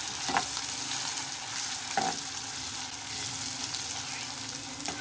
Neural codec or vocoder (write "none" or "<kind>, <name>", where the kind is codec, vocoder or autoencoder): none